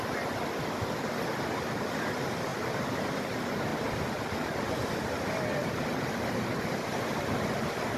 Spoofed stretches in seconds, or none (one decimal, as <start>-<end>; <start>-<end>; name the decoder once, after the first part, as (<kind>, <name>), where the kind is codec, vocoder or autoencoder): none